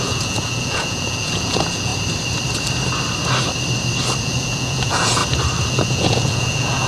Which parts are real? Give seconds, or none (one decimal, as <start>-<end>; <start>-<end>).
1.9-4.2; 5.2-5.7